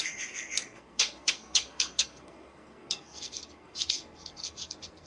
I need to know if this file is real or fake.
fake